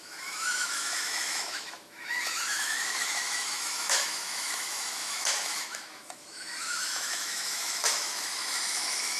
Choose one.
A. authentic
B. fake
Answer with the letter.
B